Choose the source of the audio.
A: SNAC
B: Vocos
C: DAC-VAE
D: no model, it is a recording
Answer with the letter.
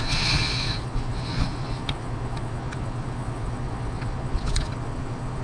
B